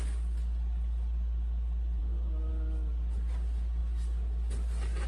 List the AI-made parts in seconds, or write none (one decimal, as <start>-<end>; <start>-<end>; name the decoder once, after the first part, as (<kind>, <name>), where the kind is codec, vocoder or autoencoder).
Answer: none